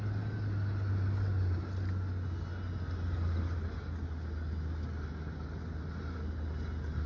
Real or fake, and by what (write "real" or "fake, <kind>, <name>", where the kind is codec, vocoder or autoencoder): real